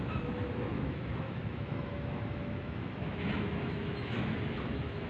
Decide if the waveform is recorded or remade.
remade